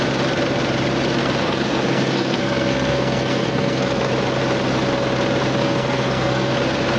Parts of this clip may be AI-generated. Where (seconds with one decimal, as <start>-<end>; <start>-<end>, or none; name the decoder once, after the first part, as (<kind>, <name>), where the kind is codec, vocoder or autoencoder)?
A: 1.2-4.1 (codec, SNAC); 5.6-6.5